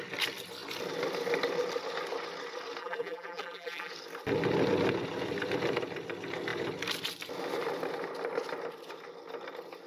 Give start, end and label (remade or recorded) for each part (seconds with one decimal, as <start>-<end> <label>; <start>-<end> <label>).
0.0-2.8 recorded; 2.8-3.9 remade; 3.9-9.9 recorded

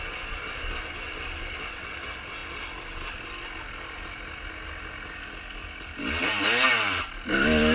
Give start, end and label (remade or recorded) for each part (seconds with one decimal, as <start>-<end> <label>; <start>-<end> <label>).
0.0-7.7 recorded

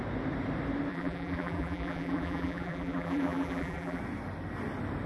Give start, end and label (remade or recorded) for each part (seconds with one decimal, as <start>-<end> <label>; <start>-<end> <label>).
0.0-0.9 recorded; 0.9-4.0 remade; 4.0-5.1 recorded

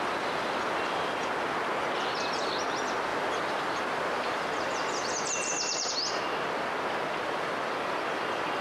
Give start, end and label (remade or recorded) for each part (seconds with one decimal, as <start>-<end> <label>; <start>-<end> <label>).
0.0-3.1 recorded; 3.1-5.9 remade; 5.9-8.6 recorded

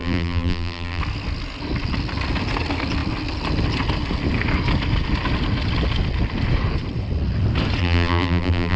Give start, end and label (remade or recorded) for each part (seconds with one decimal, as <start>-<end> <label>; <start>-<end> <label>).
0.0-1.0 remade; 1.0-7.8 recorded; 7.8-8.8 remade